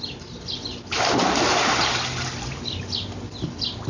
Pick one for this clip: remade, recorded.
recorded